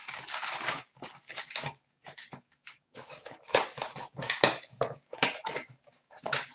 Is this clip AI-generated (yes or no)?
yes